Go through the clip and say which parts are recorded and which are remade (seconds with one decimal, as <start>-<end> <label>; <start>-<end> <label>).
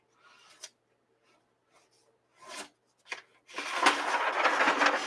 0.0-5.1 recorded